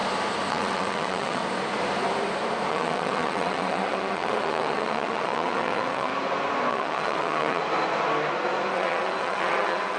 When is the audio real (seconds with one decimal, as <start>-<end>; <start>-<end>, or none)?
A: 0.0-0.5; 1.4-2.7; 6.1-6.7; 7.6-8.7